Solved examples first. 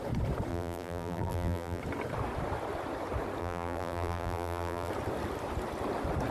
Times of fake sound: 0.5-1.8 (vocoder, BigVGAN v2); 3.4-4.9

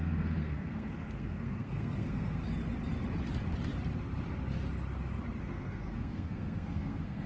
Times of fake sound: 0.0-2.4 (codec, SNAC); 5.4-7.3

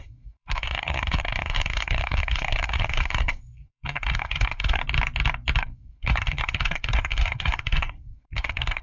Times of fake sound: 0.0-4.8 (codec, SNAC); 5.6-8.8

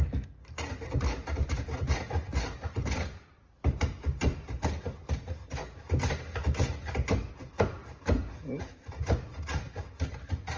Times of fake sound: none

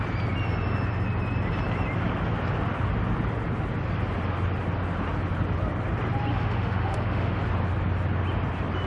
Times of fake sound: 6.3-7.4 (autoencoder, DAC-VAE)

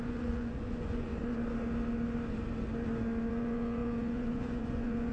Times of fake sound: 0.0-1.1 (vocoder, Vocos); 3.3-5.1

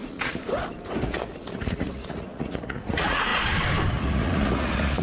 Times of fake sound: 0.0-0.4 (vocoder, Vocos); 1.0-3.3; 3.9-5.0

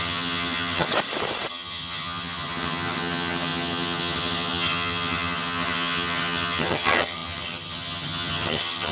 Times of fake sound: 0.0-0.9 (vocoder, HiFi-GAN); 1.5-8.9